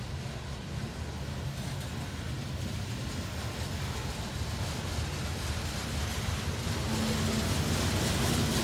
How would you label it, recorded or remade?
recorded